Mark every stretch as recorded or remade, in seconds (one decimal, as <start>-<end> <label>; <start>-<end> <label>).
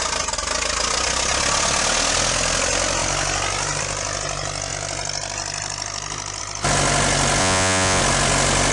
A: 0.0-7.4 recorded; 7.4-8.0 remade; 8.0-8.7 recorded